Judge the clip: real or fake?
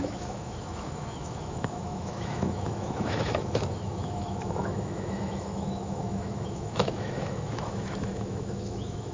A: fake